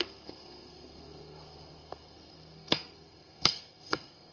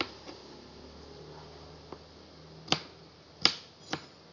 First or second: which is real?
second